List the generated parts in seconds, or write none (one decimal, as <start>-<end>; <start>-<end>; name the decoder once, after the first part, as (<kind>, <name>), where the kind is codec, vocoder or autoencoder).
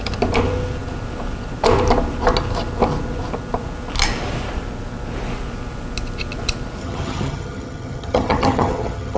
6.8-9.2 (vocoder, HiFi-GAN)